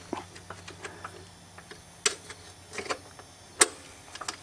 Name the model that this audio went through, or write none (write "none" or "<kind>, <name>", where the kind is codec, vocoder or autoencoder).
none